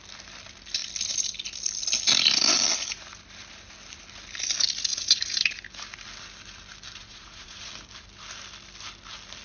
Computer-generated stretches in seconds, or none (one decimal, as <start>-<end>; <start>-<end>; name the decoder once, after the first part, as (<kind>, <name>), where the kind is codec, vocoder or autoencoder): 4.9-5.6 (vocoder, Vocos); 7.0-7.7